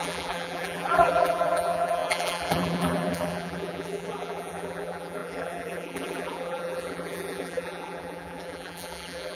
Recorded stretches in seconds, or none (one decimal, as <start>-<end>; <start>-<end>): none